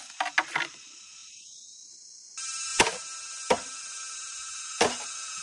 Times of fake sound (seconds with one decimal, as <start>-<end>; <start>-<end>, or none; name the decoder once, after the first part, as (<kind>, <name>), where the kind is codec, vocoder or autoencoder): none